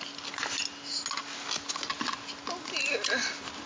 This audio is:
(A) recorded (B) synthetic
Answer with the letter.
A